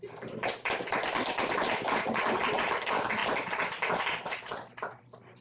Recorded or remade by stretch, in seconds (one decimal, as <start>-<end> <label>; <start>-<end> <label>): 0.0-5.4 recorded

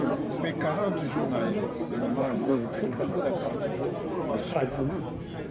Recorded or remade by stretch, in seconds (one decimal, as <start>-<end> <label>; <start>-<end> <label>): 0.0-2.2 recorded; 2.2-3.2 remade; 3.2-4.4 recorded; 4.4-5.0 remade; 5.0-5.5 recorded

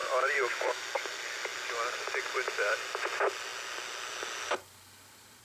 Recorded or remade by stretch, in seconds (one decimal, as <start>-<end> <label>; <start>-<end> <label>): 0.0-0.8 remade; 0.8-5.4 recorded

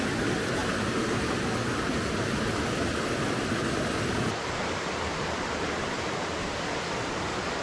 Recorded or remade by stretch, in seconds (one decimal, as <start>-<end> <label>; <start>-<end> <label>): 0.0-0.6 recorded; 0.6-1.4 remade; 1.4-7.6 recorded